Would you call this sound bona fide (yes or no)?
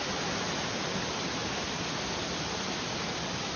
yes